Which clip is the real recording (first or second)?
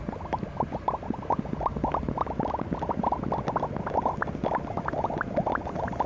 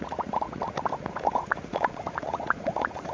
first